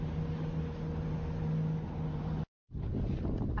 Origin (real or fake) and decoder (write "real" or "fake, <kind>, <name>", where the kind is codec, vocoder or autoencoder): real